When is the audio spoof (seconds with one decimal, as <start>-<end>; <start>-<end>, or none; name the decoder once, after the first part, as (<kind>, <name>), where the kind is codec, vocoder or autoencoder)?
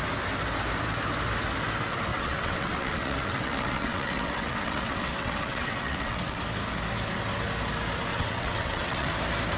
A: 2.1-6.4 (vocoder, WaveNeXt); 8.1-9.1